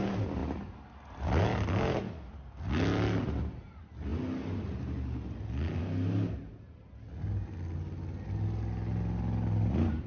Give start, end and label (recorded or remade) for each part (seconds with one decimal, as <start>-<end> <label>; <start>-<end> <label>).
0.0-10.1 recorded